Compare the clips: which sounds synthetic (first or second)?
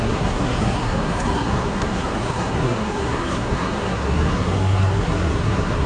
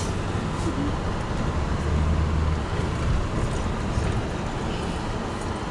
first